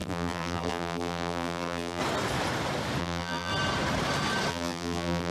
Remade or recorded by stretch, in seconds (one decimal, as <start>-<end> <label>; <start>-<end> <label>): 0.0-2.0 remade; 2.0-3.0 recorded; 3.0-3.5 remade; 3.5-4.5 recorded; 4.5-5.3 remade